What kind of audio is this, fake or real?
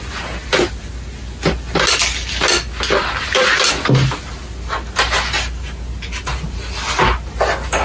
real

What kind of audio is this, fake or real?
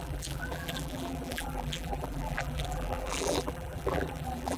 fake